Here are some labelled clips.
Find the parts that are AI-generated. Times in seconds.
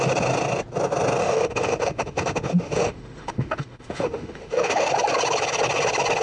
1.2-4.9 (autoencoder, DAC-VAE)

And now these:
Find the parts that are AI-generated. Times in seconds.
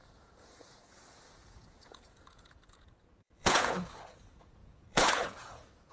0.0-5.9 (vocoder, Vocos)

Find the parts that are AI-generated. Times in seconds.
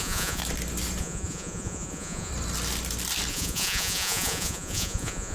0.0-0.4 (vocoder, Vocos); 1.0-2.3; 3.3-5.3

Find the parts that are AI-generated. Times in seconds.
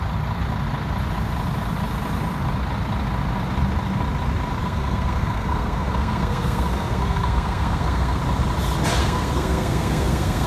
4.6-8.2 (codec, SNAC); 9.0-10.5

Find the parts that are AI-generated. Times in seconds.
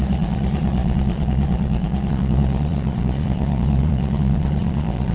0.0-5.1 (vocoder, Vocos)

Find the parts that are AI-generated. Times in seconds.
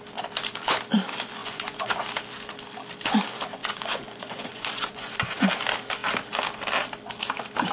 1.4-1.9 (vocoder, Vocos); 3.6-5.5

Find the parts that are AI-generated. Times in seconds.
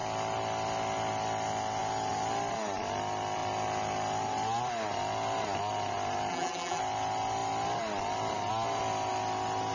6.3-6.8 (vocoder, BigVGAN v2)